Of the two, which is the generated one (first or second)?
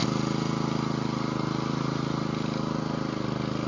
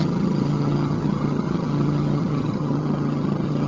second